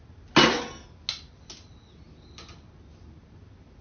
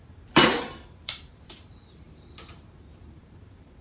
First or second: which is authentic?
first